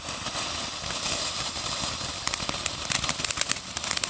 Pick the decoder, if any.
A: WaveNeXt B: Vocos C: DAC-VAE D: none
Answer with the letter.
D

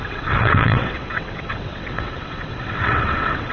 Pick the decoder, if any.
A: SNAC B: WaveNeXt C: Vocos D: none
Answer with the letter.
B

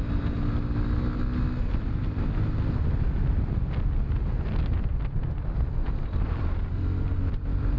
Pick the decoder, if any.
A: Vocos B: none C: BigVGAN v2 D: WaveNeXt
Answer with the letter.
B